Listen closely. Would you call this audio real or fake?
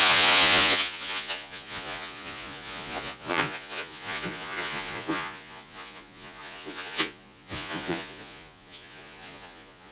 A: fake